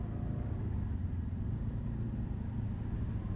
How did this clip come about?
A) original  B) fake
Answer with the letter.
A